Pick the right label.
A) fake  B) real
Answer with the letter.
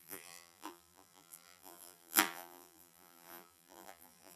A